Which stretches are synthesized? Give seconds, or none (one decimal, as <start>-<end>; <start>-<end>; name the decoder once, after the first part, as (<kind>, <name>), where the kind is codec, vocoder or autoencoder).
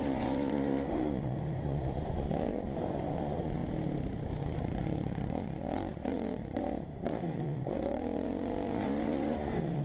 0.0-3.6 (vocoder, Vocos); 4.4-9.8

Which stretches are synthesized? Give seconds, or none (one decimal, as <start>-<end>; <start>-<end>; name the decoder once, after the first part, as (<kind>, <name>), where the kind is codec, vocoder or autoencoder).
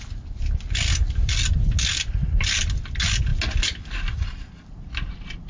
none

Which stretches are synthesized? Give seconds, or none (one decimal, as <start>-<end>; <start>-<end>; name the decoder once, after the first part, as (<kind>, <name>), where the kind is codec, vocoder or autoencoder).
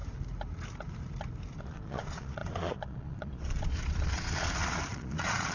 1.6-5.5 (vocoder, Vocos)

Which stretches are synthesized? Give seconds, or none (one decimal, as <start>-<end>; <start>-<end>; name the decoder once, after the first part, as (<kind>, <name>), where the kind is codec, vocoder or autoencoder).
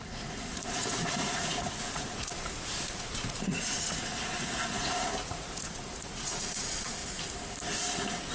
0.0-7.0 (vocoder, Vocos)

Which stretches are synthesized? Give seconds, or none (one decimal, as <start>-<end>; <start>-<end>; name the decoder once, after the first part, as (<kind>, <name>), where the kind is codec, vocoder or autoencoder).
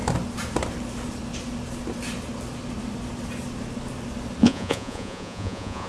4.4-5.9 (vocoder, Vocos)